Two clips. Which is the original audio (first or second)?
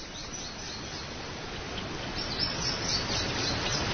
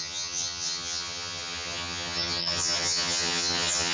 first